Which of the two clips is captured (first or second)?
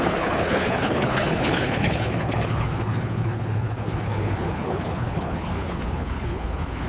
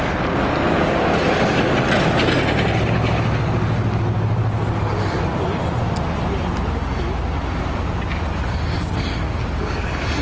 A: second